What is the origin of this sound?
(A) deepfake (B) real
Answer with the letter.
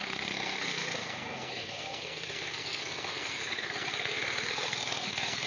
A